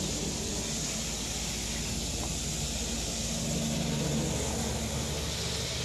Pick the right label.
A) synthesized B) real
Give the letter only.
B